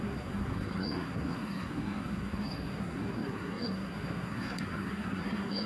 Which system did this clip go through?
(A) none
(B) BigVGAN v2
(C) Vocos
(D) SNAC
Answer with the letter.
D